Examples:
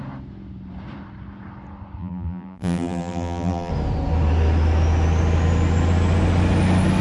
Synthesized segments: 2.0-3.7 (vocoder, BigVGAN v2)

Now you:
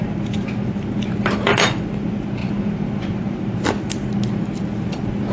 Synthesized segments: 2.4-3.7 (vocoder, BigVGAN v2)

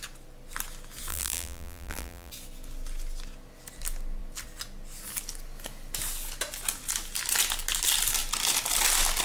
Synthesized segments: 1.1-2.3 (vocoder, BigVGAN v2)